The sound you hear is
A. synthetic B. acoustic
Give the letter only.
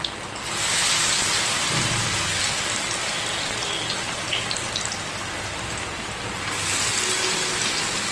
B